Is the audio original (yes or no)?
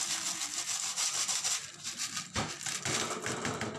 yes